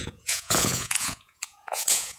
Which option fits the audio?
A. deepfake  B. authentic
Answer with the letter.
A